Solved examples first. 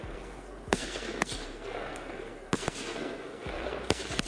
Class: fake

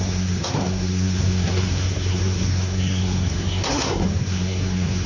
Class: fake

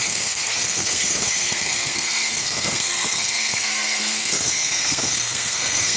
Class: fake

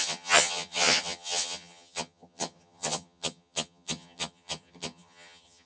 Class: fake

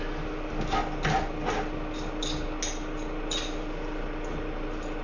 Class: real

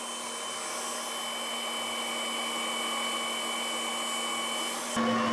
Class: real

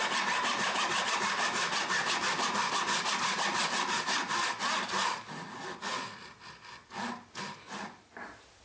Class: real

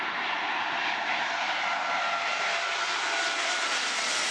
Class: real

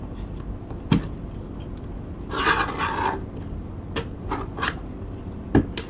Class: real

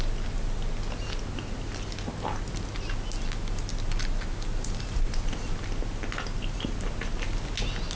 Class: real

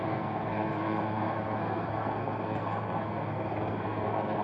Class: fake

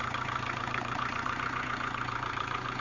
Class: fake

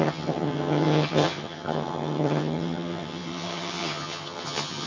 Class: fake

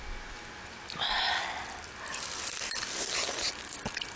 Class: real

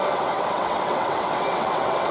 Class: fake